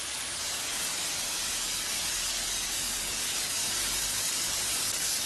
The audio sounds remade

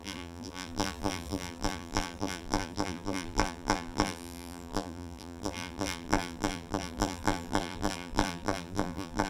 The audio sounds remade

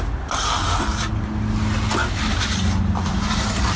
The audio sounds recorded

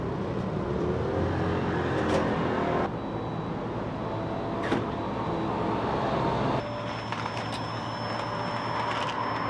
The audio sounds recorded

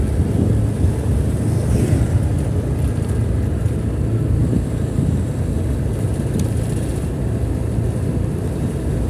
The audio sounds recorded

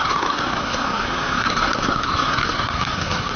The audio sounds remade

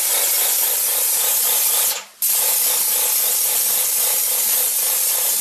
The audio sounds recorded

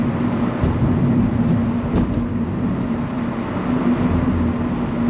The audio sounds recorded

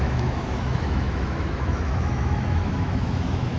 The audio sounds remade